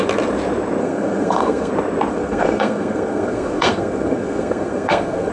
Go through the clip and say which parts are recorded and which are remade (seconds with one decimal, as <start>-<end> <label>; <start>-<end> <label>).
0.0-0.8 recorded; 0.8-1.7 remade; 1.7-2.1 recorded; 2.1-5.3 remade